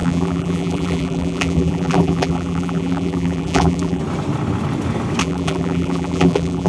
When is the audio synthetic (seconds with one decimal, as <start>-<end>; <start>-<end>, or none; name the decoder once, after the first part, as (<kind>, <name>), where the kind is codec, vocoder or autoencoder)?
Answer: 0.0-4.0 (vocoder, BigVGAN v2); 5.2-6.7